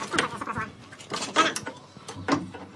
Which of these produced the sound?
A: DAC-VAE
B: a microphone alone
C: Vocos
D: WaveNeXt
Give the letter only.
B